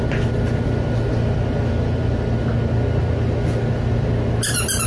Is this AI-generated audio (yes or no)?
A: no